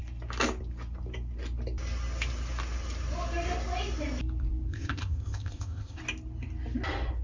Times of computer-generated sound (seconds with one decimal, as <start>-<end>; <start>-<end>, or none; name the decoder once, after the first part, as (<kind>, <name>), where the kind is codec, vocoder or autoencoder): 4.7-6.0 (codec, ZipCodec)